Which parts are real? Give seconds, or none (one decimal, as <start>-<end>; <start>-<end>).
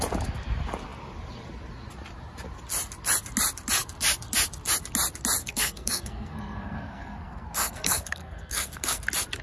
0.0-5.4; 9.0-9.4